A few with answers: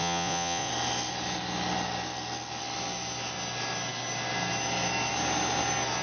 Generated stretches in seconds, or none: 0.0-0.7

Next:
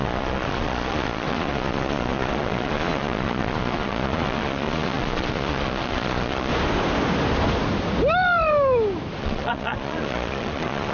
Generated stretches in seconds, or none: 0.0-6.5; 9.2-10.9